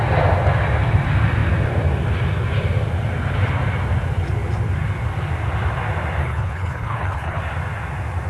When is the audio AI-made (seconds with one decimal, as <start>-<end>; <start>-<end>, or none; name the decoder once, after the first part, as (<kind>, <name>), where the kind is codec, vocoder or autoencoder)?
6.2-7.4 (codec, HILCodec)